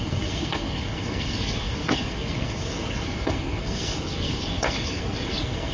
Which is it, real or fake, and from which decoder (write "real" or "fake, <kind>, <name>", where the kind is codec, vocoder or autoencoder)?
fake, codec, SNAC